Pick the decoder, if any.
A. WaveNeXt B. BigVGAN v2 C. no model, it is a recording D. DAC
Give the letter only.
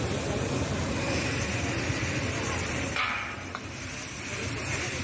C